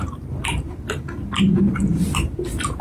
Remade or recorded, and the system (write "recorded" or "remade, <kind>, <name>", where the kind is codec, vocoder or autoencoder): recorded